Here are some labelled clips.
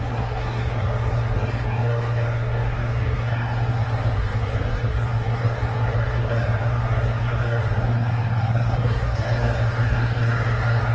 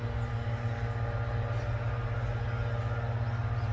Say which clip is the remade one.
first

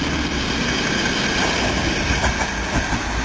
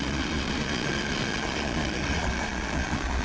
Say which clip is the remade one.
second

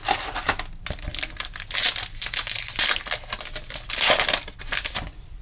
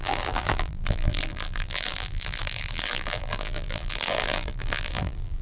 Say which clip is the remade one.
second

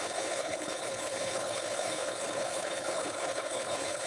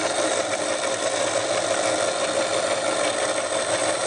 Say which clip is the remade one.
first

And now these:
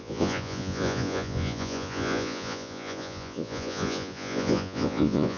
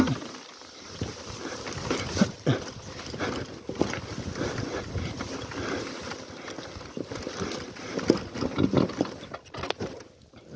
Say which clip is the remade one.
first